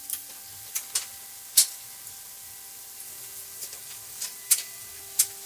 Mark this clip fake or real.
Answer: real